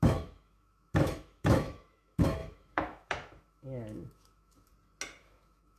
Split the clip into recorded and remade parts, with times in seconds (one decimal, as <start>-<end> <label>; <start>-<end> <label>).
0.0-4.7 remade; 4.7-5.2 recorded; 5.2-5.8 remade